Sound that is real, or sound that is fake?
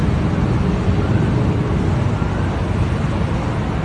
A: real